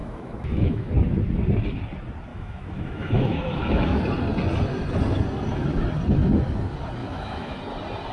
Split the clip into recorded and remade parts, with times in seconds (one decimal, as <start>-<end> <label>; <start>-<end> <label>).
0.0-0.9 remade; 0.9-2.3 recorded; 2.3-4.0 remade; 4.0-7.0 recorded; 7.0-7.6 remade; 7.6-8.1 recorded